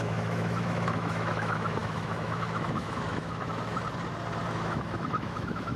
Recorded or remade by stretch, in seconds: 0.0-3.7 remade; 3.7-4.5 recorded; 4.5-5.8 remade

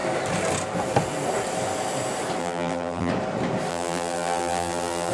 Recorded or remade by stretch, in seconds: 0.0-2.4 recorded; 2.4-3.1 remade; 3.1-3.7 recorded; 3.7-5.1 remade

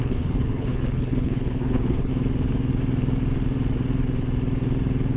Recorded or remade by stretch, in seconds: 0.0-2.1 remade; 2.1-5.2 recorded

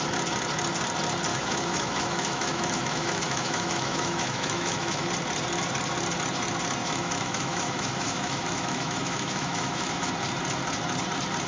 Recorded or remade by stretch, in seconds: 0.0-1.3 recorded; 1.3-5.1 remade; 5.1-6.8 recorded; 6.8-10.1 remade; 10.1-11.5 recorded

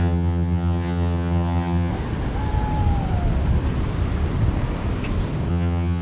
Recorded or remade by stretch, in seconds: 0.0-1.9 remade; 1.9-5.5 recorded; 5.5-6.0 remade